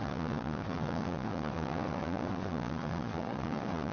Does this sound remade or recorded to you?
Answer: remade